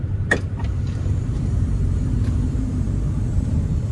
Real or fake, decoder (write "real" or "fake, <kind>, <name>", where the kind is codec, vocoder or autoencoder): fake, vocoder, BigVGAN v2